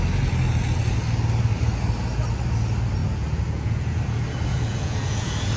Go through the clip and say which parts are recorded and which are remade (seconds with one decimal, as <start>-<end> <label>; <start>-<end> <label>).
0.0-3.0 recorded; 3.0-4.0 remade; 4.0-4.5 recorded; 4.5-5.6 remade